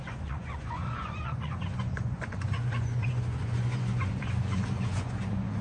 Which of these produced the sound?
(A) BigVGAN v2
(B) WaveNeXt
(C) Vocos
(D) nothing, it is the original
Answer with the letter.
C